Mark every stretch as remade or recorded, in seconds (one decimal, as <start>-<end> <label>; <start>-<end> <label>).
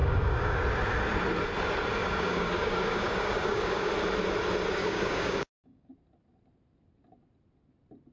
0.0-0.6 remade; 0.6-2.0 recorded; 2.0-3.9 remade; 3.9-4.8 recorded; 4.8-5.9 remade; 5.9-8.1 recorded